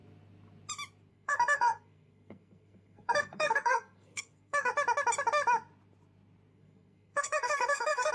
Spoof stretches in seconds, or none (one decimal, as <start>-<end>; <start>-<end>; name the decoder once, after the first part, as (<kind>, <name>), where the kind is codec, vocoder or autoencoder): 1.1-4.7 (codec, SNAC); 6.5-8.1